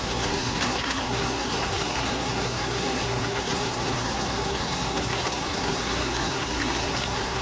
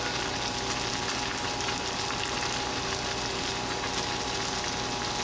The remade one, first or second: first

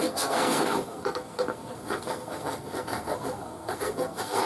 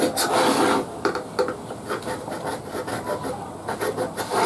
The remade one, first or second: first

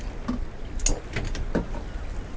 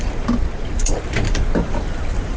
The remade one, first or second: second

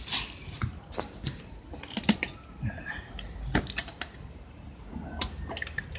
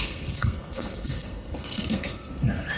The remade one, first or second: second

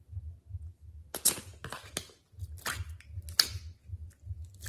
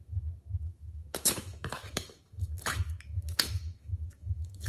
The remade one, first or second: second